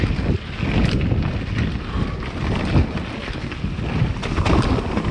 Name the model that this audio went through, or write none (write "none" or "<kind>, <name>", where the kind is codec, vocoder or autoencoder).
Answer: none